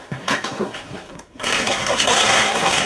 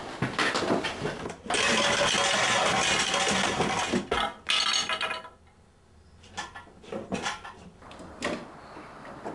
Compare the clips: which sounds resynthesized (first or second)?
first